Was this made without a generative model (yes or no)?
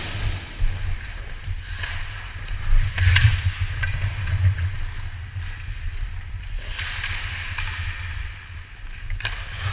yes